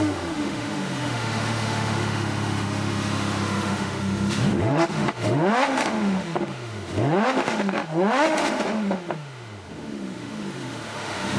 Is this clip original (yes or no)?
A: no